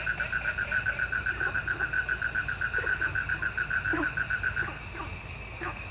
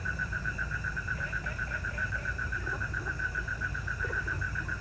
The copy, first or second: second